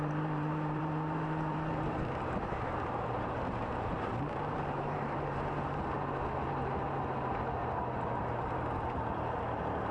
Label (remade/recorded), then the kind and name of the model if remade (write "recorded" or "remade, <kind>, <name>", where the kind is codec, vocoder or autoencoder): remade, vocoder, BigVGAN v2